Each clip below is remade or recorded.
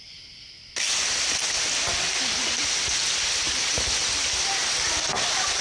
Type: recorded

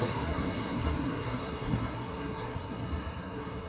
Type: remade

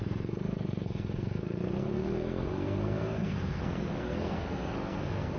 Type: remade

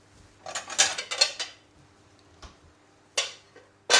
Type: recorded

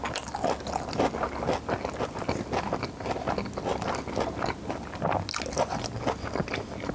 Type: recorded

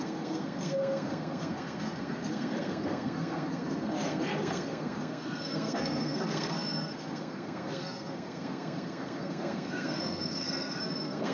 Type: remade